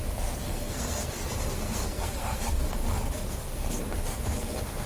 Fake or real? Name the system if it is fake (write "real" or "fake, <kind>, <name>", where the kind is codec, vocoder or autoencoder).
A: fake, codec, SNAC